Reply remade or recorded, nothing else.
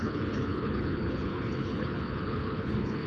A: remade